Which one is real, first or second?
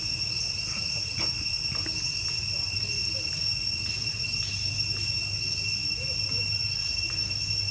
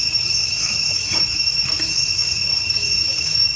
first